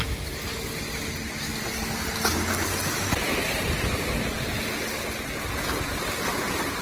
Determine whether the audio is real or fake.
real